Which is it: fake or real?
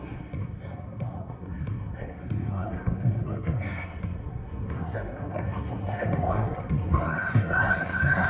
fake